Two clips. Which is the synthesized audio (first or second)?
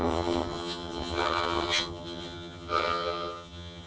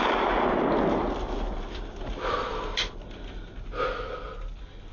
first